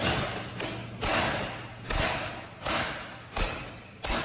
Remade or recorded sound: recorded